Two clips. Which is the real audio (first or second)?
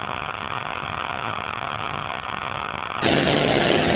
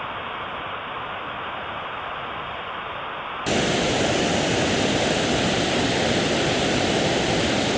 second